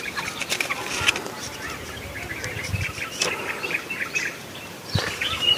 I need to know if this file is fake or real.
real